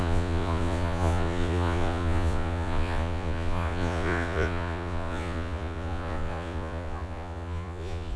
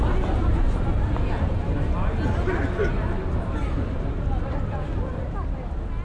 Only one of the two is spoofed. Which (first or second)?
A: first